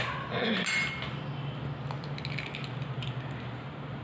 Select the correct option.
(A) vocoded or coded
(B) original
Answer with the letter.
B